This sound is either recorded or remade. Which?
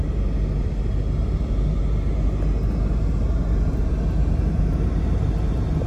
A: recorded